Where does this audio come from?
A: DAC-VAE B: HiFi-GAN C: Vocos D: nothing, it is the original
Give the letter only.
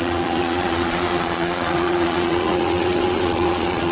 C